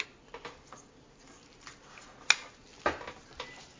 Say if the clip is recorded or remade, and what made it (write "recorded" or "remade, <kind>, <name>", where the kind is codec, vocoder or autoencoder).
recorded